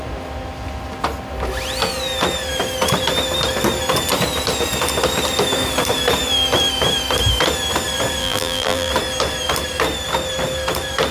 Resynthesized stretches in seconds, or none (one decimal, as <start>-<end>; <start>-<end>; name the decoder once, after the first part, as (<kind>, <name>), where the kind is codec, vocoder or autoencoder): 8.2-8.9 (vocoder, BigVGAN v2)